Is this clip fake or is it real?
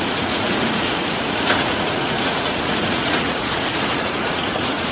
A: fake